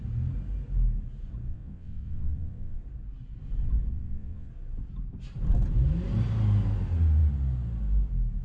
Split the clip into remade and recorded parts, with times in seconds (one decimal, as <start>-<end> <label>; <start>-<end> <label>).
0.0-1.5 recorded; 1.5-2.8 remade; 2.8-3.9 recorded; 3.9-4.5 remade; 4.5-8.4 recorded